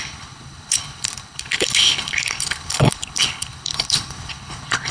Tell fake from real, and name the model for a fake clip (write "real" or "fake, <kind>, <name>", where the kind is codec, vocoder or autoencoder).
fake, codec, HILCodec